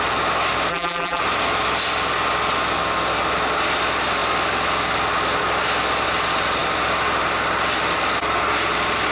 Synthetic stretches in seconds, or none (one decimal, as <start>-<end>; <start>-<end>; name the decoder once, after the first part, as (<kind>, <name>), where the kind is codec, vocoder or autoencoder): 0.7-1.2 (vocoder, BigVGAN v2)